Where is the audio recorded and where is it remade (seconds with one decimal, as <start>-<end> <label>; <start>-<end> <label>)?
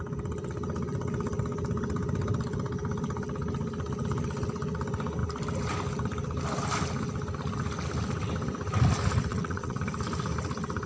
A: 0.0-9.3 recorded; 9.3-9.8 remade; 9.8-10.9 recorded